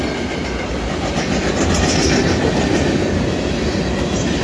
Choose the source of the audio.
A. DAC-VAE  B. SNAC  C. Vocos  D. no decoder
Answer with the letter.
D